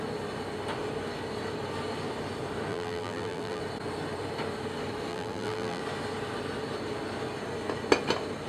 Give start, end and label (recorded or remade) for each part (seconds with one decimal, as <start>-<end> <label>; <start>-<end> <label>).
0.0-2.7 recorded; 2.7-3.6 remade; 3.6-5.1 recorded; 5.1-5.8 remade; 5.8-8.5 recorded

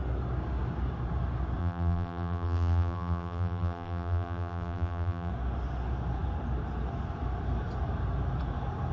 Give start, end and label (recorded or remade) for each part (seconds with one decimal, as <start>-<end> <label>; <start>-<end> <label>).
0.0-1.6 recorded; 1.6-5.3 remade; 5.3-8.9 recorded

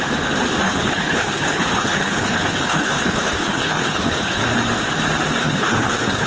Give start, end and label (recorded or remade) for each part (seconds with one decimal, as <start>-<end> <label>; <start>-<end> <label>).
0.0-0.6 recorded; 0.6-4.4 remade; 4.4-5.4 recorded; 5.4-6.3 remade

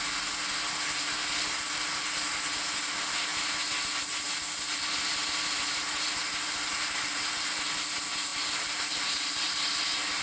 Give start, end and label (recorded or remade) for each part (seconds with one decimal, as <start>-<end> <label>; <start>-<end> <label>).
0.0-8.3 recorded; 8.3-10.2 remade

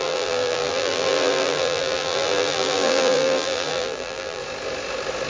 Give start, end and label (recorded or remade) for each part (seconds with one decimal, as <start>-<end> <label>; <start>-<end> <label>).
0.0-4.4 remade; 4.4-5.3 recorded

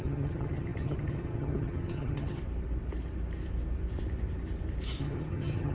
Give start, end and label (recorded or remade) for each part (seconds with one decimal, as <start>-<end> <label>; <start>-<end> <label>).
0.0-2.4 remade; 2.4-5.0 recorded; 5.0-5.7 remade

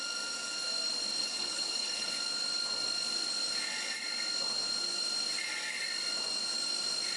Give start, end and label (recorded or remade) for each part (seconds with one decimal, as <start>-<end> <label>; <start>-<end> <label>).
0.0-1.2 recorded; 1.2-2.1 remade; 2.1-7.2 recorded

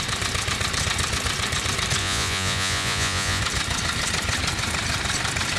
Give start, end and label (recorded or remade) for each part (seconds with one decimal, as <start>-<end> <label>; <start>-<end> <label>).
0.0-2.0 recorded; 2.0-3.4 remade; 3.4-5.6 recorded